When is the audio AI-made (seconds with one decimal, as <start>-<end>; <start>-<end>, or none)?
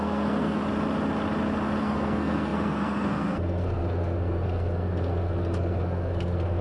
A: 0.0-0.6; 1.8-6.6